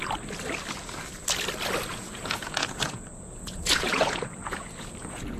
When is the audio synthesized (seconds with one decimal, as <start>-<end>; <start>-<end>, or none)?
1.9-5.4